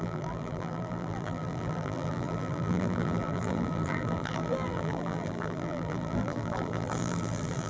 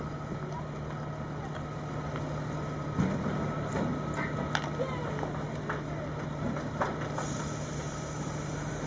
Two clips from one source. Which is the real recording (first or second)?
second